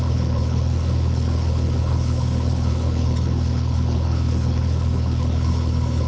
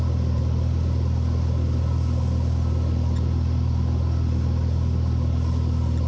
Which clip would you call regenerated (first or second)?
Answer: first